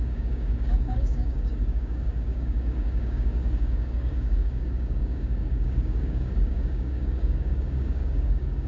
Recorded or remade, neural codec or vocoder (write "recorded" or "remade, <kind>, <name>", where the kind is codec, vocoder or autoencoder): remade, codec, DAC